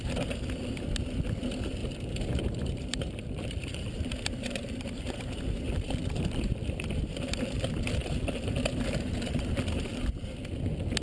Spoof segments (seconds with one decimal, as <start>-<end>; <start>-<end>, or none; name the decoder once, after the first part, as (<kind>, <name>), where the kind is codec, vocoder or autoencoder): 1.8-7.0 (vocoder, BigVGAN v2); 8.0-9.5